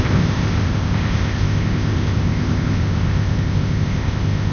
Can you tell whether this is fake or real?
fake